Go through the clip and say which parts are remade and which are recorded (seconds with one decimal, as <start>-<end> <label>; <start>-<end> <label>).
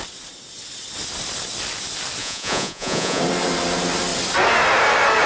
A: 0.0-2.2 recorded; 2.2-3.2 remade; 3.2-5.3 recorded